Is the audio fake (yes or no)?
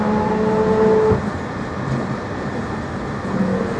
no